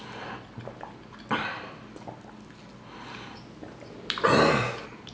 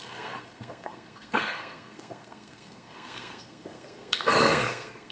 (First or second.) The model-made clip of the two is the second